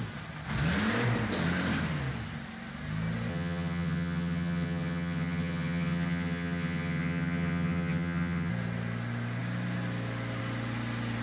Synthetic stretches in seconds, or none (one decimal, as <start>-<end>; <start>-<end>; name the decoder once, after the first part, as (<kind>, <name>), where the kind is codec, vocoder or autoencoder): 3.3-8.5 (vocoder, HiFi-GAN)